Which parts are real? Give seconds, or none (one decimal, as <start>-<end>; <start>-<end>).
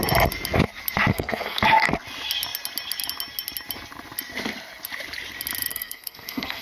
0.0-1.1; 1.6-5.7